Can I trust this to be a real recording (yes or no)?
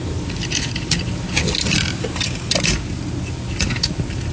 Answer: yes